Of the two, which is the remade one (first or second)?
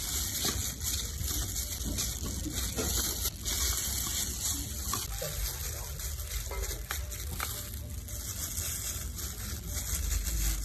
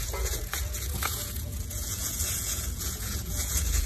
second